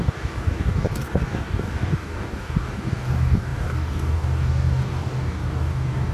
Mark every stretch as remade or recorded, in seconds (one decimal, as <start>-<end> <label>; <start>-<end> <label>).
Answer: 0.0-6.1 remade